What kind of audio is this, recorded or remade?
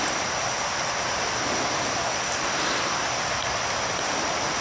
remade